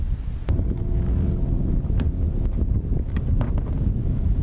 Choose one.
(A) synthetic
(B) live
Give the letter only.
B